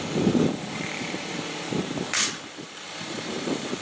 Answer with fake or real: fake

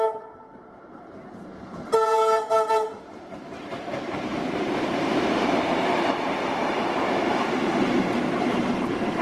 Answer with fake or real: fake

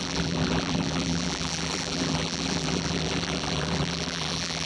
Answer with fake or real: fake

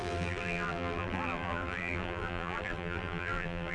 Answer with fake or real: fake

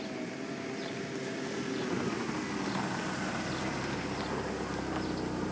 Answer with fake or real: real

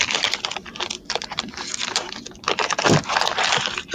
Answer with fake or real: fake